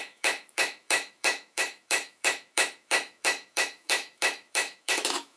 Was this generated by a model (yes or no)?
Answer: yes